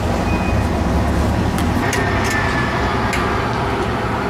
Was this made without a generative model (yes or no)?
yes